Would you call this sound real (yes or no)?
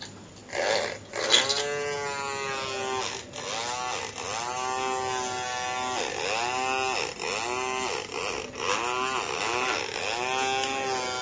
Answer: yes